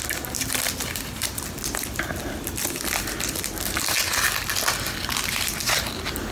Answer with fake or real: real